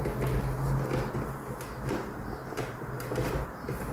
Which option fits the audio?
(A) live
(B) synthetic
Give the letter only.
A